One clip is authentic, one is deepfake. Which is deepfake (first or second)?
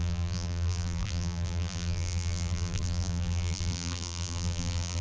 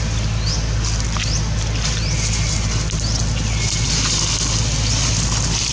first